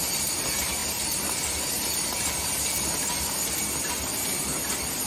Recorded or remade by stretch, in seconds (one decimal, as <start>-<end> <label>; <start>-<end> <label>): 0.0-5.1 recorded